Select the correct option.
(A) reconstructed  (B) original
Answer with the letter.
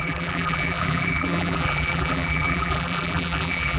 A